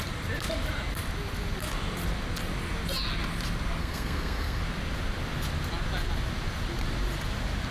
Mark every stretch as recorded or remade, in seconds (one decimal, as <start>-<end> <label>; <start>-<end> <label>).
0.0-3.8 recorded; 3.8-4.6 remade; 4.6-7.7 recorded